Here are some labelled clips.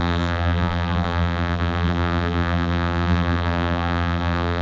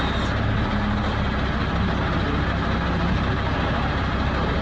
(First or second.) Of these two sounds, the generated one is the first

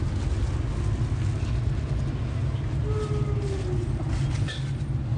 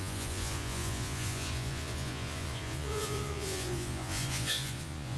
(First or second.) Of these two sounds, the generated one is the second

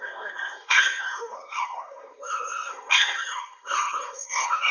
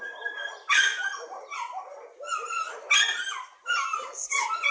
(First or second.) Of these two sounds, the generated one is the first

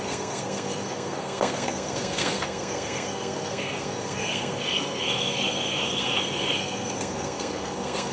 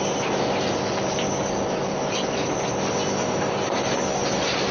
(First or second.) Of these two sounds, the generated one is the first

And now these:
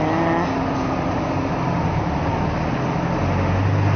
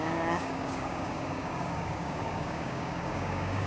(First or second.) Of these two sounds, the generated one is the second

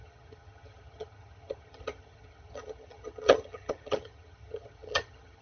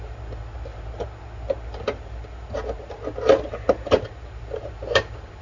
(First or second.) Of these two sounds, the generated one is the first